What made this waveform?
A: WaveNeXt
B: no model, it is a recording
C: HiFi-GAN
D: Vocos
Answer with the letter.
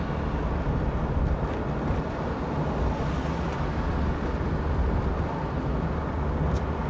B